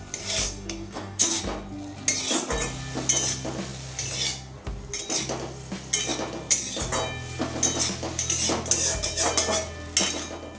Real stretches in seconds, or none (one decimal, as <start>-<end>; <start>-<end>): 0.0-0.4; 1.4-10.6